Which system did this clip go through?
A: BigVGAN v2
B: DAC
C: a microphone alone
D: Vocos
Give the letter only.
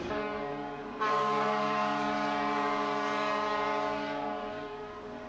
B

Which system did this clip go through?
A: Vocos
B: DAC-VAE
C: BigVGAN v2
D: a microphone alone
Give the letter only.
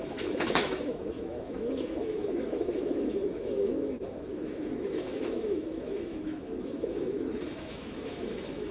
B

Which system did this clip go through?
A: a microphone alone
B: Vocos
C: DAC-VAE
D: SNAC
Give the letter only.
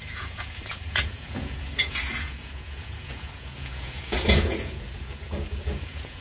B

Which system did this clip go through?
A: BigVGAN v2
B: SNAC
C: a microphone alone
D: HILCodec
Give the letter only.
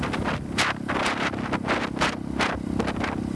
A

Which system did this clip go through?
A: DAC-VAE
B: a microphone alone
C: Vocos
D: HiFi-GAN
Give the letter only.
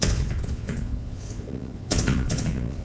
C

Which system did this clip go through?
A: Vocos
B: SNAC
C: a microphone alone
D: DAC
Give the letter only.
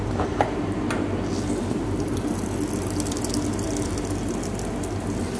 C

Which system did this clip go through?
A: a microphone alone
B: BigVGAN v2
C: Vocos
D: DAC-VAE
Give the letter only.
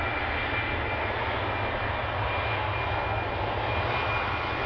A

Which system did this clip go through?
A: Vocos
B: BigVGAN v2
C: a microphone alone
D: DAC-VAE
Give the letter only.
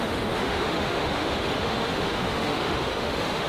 D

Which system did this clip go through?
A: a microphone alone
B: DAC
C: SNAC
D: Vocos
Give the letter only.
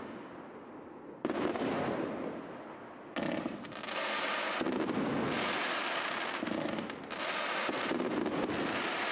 A